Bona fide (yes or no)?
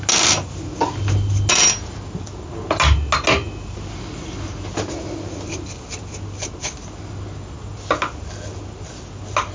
yes